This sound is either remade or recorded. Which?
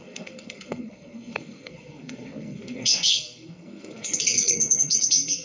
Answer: remade